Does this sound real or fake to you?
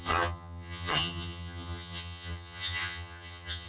fake